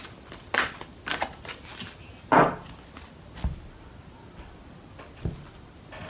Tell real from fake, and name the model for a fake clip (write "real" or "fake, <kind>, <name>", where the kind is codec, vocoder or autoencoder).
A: real